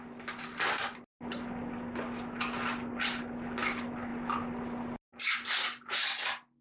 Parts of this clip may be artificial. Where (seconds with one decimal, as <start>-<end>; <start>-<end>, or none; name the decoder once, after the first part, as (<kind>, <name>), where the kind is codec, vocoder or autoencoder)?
none